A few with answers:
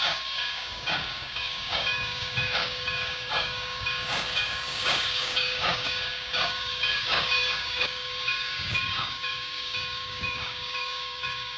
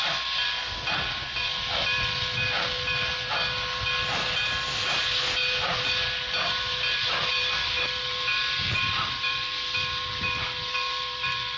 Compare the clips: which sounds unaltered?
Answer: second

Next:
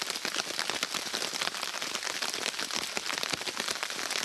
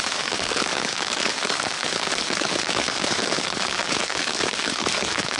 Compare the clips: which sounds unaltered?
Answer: first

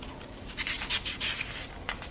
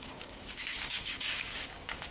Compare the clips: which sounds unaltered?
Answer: first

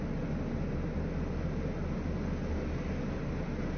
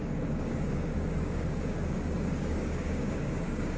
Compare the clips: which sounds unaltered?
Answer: first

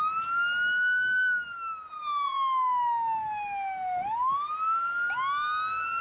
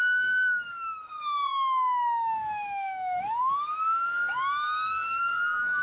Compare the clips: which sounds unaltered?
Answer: first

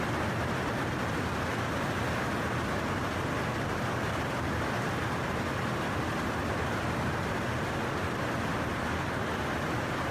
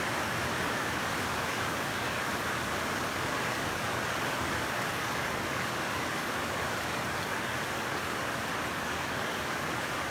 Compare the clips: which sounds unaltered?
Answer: first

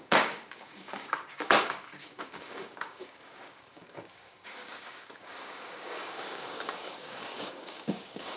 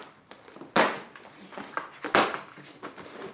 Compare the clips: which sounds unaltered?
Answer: second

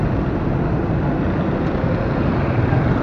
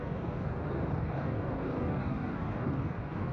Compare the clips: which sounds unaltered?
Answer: first